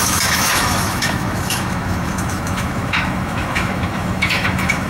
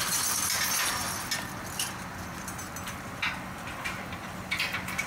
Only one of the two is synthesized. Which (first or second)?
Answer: first